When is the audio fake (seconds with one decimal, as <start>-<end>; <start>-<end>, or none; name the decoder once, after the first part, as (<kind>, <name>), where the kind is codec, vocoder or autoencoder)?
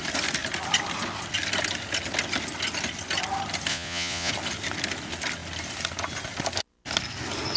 3.7-4.3 (vocoder, Vocos)